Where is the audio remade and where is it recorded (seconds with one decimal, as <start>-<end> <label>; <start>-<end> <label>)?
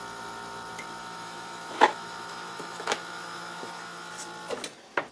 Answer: 0.0-1.0 recorded; 1.0-4.1 remade; 4.1-5.1 recorded